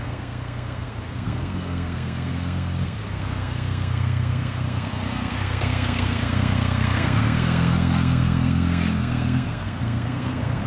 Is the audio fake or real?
fake